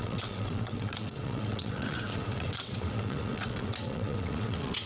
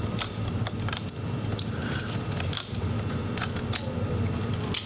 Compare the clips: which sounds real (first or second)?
second